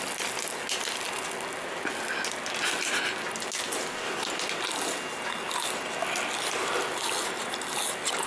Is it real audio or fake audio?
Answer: real